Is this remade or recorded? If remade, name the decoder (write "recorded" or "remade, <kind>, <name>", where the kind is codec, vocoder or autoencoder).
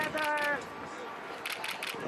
recorded